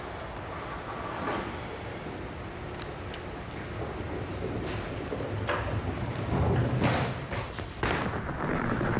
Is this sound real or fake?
real